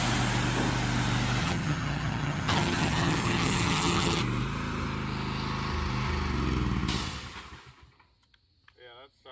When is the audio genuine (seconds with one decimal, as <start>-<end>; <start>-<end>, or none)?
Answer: 0.0-1.4; 4.2-9.3